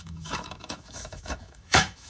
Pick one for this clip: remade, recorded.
remade